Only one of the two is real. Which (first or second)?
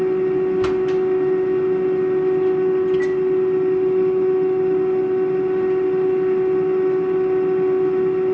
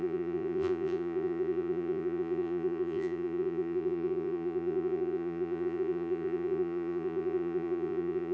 first